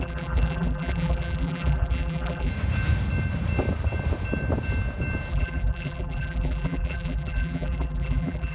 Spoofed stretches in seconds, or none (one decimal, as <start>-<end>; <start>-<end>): 0.0-2.5; 5.3-8.5